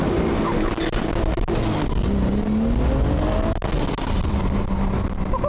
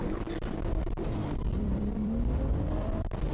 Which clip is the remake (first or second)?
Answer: second